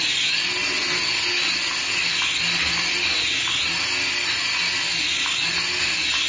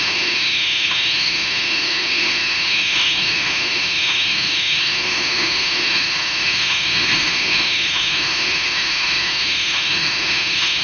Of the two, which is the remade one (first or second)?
second